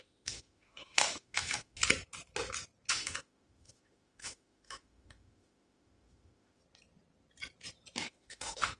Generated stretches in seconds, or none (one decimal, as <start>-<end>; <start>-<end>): 0.0-1.8; 2.9-6.6; 8.0-8.8